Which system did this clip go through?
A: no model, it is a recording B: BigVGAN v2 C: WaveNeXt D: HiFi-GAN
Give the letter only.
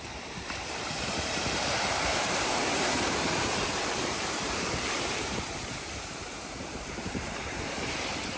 B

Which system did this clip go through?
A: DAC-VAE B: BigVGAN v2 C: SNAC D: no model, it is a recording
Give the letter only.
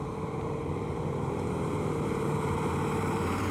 B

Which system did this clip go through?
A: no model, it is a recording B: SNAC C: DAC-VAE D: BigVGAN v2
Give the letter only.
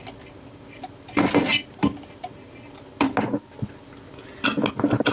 A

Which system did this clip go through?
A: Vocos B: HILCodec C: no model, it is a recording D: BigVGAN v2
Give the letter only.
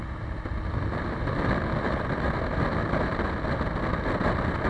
C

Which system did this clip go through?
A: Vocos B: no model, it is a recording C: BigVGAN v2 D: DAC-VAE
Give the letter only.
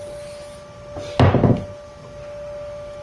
B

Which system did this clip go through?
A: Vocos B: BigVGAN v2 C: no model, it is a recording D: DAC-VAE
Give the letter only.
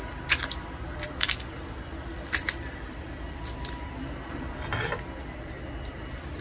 B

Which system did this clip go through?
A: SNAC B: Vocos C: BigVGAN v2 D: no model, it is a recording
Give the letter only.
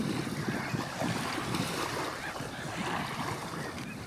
C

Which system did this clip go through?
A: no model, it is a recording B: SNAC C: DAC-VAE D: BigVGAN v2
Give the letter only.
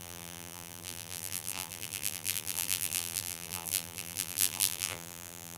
D